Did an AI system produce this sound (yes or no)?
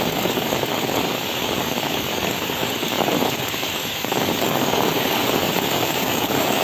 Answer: yes